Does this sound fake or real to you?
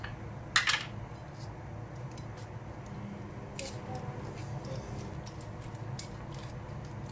real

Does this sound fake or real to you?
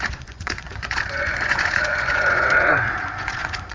fake